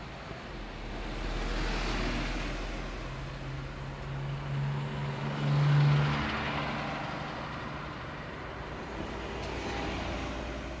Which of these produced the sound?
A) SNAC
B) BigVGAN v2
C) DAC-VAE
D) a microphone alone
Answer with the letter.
D